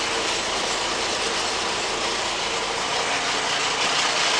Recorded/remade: recorded